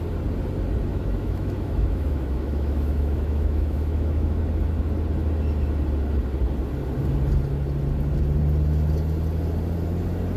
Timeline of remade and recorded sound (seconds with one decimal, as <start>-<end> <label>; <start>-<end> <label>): 0.0-0.9 recorded; 0.9-4.4 remade; 4.4-10.4 recorded